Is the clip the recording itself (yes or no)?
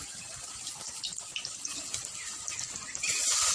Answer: yes